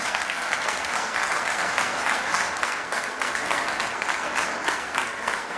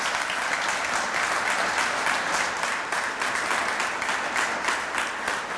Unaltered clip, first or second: second